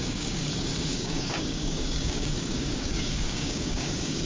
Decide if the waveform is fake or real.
fake